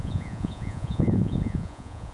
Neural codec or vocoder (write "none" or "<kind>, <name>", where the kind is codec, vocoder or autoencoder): vocoder, Vocos